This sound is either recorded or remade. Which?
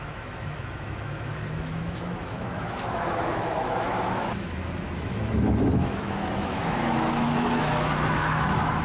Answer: remade